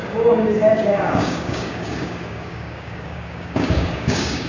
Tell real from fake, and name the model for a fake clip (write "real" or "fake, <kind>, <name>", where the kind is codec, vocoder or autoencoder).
fake, codec, DAC